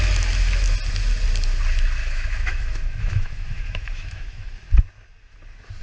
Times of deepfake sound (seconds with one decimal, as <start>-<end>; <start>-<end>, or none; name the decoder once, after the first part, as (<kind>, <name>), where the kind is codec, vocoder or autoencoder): 2.0-4.5 (autoencoder, DAC-VAE)